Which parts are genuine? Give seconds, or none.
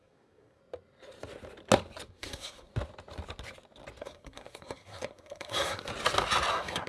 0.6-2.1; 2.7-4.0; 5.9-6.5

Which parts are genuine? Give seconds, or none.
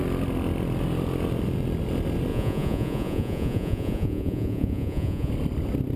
0.0-2.3; 5.3-6.0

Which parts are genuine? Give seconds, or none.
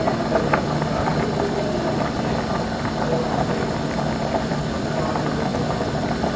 0.0-6.4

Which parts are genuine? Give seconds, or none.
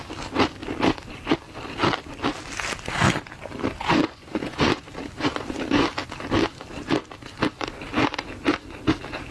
0.0-4.0; 4.9-9.3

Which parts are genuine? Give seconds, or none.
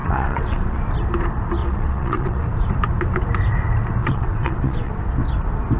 0.8-1.6; 2.4-4.0; 4.9-5.8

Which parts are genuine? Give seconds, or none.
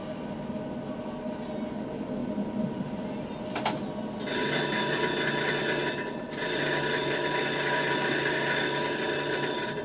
0.0-9.8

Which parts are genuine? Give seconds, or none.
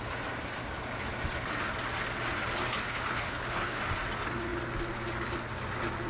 0.0-2.7; 3.8-6.1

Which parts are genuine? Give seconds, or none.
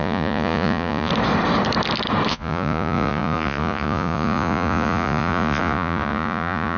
1.1-2.3